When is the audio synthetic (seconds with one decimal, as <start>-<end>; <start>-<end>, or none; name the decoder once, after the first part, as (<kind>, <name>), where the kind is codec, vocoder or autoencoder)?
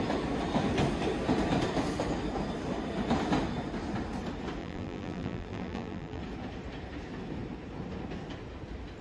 4.6-6.2 (vocoder, BigVGAN v2)